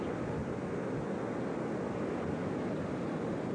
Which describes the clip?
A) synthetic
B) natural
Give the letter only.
B